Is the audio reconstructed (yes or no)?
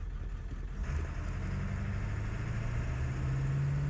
no